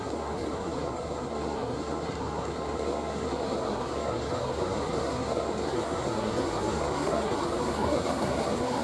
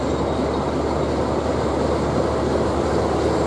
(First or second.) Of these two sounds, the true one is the second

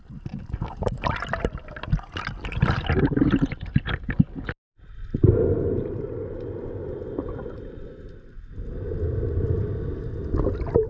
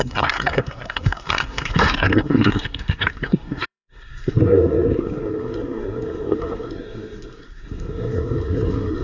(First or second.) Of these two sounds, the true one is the first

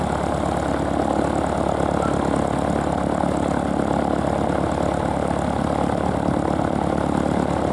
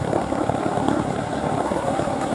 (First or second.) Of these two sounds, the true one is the first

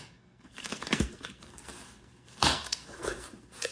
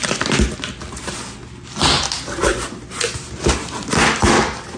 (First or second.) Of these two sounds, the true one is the second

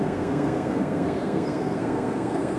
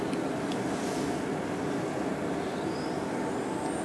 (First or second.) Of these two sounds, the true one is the second